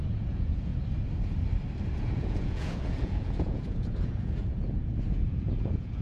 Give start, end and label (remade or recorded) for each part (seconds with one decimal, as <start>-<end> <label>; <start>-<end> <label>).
0.0-0.7 remade; 0.7-2.0 recorded; 2.0-6.0 remade